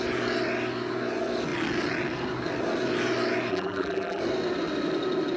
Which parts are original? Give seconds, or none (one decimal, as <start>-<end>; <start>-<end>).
0.0-3.5; 4.2-5.4